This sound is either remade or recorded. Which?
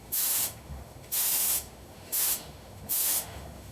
remade